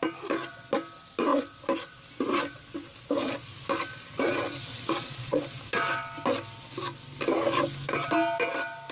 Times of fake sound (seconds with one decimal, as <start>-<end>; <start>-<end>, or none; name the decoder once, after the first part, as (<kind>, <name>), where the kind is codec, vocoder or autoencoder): 4.7-5.4 (vocoder, Vocos)